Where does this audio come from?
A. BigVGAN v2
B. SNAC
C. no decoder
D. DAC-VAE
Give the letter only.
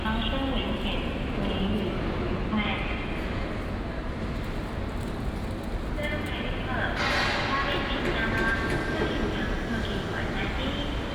C